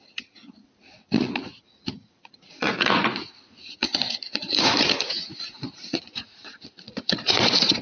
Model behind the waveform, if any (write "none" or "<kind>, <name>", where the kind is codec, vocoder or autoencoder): vocoder, Vocos